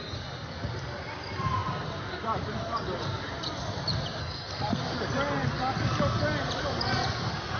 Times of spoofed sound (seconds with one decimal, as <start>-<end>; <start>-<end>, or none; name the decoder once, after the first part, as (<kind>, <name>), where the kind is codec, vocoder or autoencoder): 4.2-4.9 (codec, SNAC)